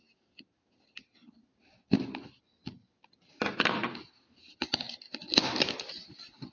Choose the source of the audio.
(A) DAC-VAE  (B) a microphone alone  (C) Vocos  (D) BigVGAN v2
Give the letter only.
B